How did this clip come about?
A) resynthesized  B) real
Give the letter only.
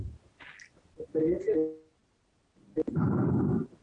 B